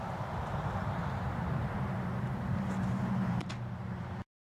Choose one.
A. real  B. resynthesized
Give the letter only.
B